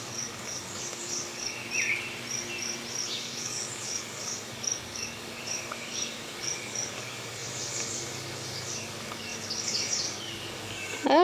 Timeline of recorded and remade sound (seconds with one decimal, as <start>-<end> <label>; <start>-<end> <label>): 0.0-1.6 remade; 1.6-3.0 recorded; 3.0-11.2 remade